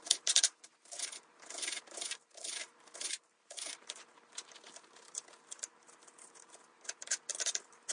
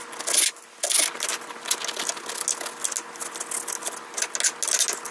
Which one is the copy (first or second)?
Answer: first